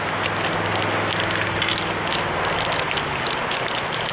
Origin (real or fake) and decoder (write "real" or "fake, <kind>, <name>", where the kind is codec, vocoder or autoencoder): real